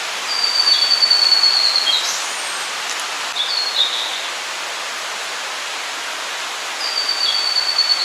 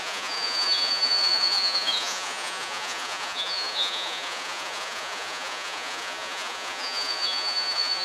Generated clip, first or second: second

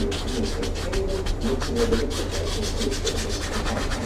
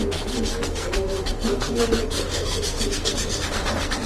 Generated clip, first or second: second